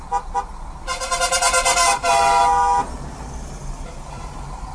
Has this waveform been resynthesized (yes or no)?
no